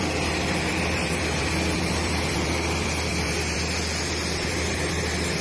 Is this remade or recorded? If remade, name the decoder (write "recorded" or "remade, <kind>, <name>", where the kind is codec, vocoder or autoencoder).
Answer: remade, vocoder, BigVGAN v2